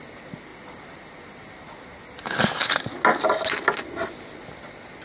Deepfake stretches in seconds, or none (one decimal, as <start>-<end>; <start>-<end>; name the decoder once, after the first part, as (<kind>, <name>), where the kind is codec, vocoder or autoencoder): none